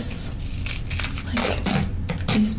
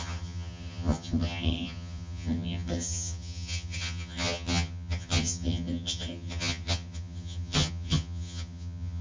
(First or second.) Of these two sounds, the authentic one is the first